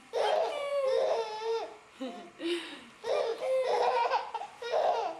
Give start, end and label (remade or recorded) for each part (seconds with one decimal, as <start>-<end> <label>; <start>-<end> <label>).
0.0-0.7 recorded; 0.7-1.6 remade; 1.6-3.3 recorded; 3.3-4.3 remade; 4.3-5.2 recorded